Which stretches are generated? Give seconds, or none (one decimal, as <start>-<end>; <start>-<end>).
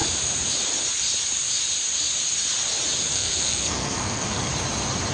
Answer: 3.1-4.5